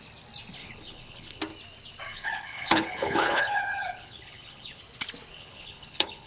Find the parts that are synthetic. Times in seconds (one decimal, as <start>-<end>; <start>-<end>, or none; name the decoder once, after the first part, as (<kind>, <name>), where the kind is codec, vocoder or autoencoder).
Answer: 0.6-1.4 (codec, HILCodec); 2.1-4.8; 5.3-6.3